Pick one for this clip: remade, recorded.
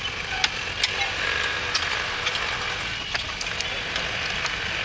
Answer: recorded